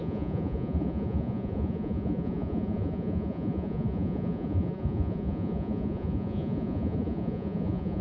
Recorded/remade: remade